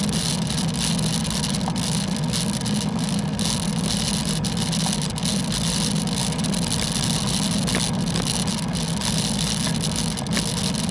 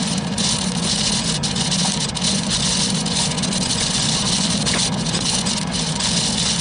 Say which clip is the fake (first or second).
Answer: second